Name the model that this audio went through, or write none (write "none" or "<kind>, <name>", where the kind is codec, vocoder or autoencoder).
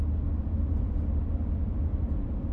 vocoder, BigVGAN v2